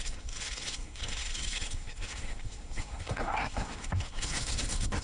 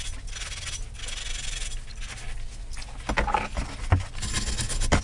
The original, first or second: second